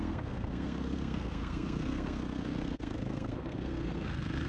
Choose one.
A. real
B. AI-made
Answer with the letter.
B